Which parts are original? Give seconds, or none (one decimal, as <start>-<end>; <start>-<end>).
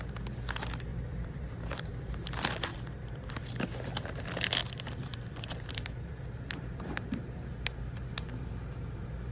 0.0-0.9; 2.1-2.7; 3.3-4.6; 8.1-9.3